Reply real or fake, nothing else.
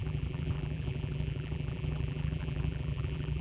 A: fake